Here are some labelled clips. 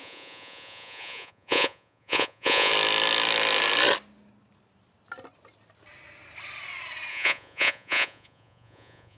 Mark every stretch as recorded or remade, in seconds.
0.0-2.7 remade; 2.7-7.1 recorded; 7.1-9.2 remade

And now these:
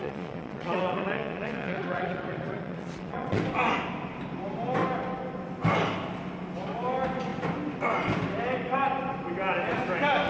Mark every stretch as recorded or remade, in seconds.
0.0-3.4 remade; 3.4-10.3 recorded

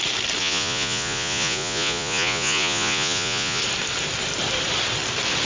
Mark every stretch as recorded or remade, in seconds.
0.0-0.4 recorded; 0.4-3.6 remade; 3.6-5.4 recorded